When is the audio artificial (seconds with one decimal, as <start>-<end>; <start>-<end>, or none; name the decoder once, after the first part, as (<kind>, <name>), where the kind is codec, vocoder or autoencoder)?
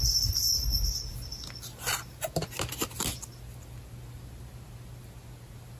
none